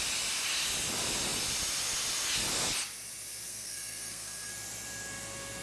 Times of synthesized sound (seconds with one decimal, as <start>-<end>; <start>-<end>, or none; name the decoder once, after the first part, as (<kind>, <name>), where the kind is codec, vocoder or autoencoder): 3.5-4.5 (codec, SNAC)